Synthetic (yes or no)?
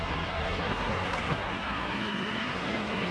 yes